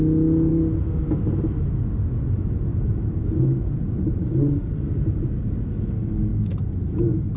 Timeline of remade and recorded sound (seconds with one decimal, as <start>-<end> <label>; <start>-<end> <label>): 0.0-2.7 recorded; 2.7-5.7 remade; 5.7-6.3 recorded; 6.3-7.0 remade; 7.0-7.4 recorded

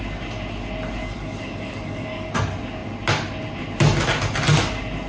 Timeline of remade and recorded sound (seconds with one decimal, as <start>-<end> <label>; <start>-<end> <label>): 0.0-1.0 recorded; 1.0-2.3 remade; 2.3-5.1 recorded

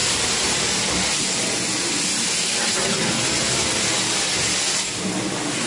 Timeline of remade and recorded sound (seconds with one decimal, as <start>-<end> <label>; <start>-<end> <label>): 0.0-5.7 recorded

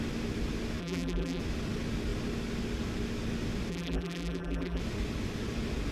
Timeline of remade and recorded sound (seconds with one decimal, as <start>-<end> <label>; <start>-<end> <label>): 0.0-0.8 recorded; 0.8-1.4 remade; 1.4-3.7 recorded; 3.7-4.8 remade; 4.8-5.9 recorded